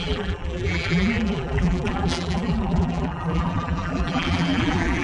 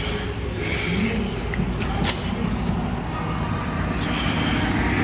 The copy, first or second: first